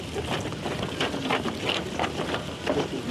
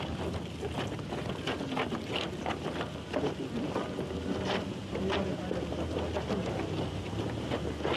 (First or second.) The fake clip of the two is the first